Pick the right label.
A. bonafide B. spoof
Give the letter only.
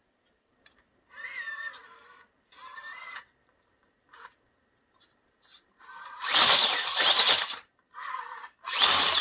B